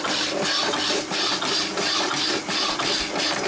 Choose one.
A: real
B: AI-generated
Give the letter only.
A